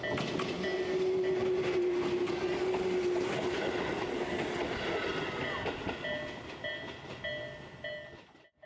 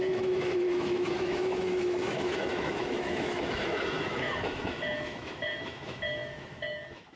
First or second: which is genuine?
first